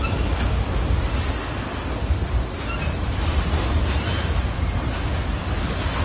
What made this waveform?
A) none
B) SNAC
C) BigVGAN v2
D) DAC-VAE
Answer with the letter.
A